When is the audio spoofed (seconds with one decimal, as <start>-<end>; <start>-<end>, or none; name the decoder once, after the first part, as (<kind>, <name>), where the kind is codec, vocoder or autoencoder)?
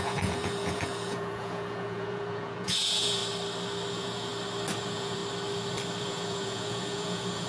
0.0-3.2 (vocoder, Vocos); 3.9-4.3; 4.8-5.2; 6.0-7.5